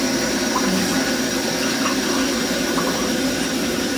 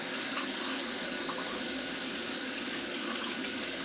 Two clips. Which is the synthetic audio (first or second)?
second